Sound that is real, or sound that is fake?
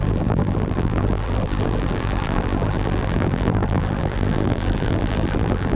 fake